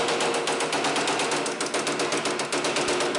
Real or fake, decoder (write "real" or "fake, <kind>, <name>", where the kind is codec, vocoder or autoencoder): real